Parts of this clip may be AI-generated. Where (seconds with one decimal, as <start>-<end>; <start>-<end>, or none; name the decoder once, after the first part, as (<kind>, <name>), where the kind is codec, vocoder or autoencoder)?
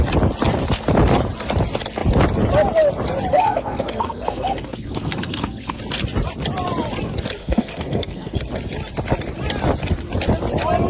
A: 3.3-5.8 (codec, SNAC); 7.4-8.4